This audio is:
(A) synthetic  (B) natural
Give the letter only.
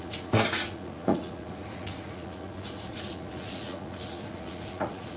A